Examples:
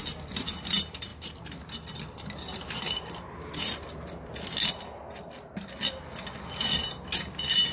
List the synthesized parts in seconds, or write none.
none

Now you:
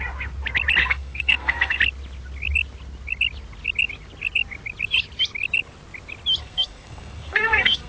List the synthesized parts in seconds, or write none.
0.8-1.8 (codec, SNAC); 6.4-7.9

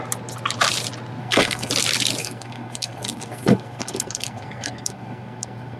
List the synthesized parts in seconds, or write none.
1.2-1.7 (codec, SNAC); 2.2-5.8

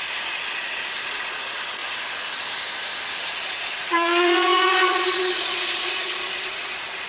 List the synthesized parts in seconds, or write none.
0.0-1.8 (vocoder, Vocos); 3.3-7.1

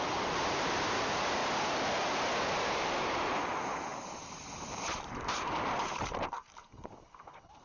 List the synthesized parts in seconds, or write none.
0.0-1.4 (vocoder, BigVGAN v2); 2.4-7.6